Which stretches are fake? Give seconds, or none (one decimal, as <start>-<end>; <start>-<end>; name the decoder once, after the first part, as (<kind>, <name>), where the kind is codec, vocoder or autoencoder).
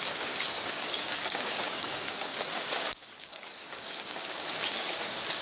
0.0-5.4 (codec, DAC)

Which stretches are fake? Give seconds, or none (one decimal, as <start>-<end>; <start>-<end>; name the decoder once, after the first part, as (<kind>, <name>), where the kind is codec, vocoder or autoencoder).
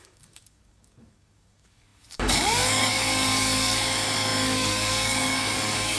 0.0-6.0 (codec, DAC)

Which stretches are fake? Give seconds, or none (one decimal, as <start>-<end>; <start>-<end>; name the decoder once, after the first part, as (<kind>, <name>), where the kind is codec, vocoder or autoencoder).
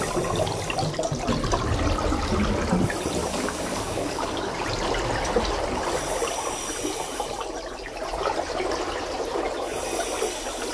3.2-4.5 (codec, DAC)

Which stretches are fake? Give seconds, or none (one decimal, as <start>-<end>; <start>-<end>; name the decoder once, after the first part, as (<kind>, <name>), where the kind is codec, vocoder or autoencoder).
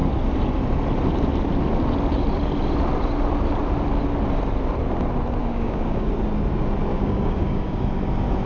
5.4-6.1 (codec, DAC); 6.9-7.8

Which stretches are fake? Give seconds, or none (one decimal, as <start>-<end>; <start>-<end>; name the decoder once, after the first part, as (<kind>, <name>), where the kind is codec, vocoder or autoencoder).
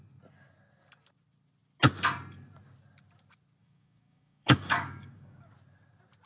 3.6-5.5 (codec, DAC)